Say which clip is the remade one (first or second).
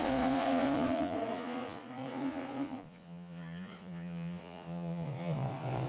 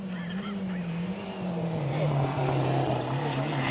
first